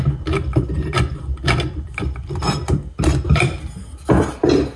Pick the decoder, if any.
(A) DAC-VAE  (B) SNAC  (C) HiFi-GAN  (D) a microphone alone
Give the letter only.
D